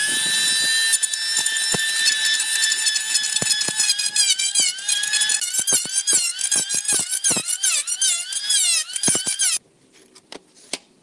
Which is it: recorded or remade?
recorded